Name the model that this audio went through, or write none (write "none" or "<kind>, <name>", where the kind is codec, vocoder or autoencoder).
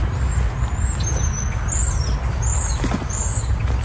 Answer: none